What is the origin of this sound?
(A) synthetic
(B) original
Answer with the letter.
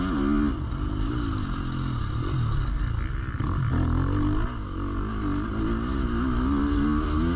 B